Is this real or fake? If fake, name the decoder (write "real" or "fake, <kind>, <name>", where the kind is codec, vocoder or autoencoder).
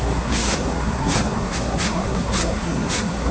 fake, codec, SNAC